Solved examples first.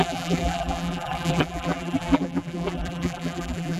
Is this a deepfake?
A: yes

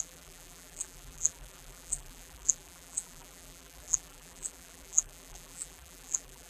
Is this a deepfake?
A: yes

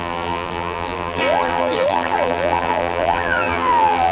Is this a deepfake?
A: yes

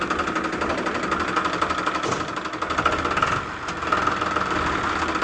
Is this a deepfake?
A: no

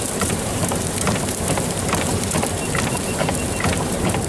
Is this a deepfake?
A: yes